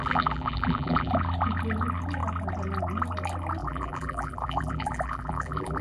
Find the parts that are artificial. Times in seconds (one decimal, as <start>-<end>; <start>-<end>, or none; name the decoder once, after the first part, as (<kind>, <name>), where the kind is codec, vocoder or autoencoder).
0.0-1.1 (vocoder, BigVGAN v2); 3.6-5.8